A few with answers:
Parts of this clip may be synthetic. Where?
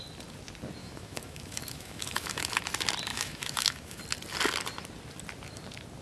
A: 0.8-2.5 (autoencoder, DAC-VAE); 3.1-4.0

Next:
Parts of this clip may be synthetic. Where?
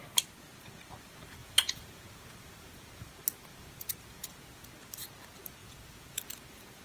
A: 1.4-3.1 (vocoder, Vocos); 3.5-4.7; 5.6-6.2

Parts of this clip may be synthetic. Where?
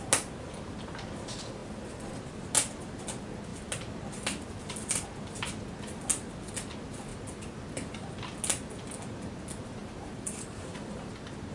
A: 9.8-11.1 (vocoder, BigVGAN v2)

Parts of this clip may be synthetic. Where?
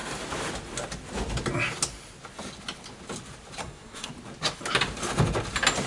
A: 3.6-4.1 (codec, SNAC)